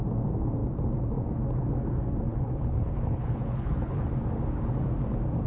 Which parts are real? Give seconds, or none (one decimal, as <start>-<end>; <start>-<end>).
0.0-2.3; 4.1-5.5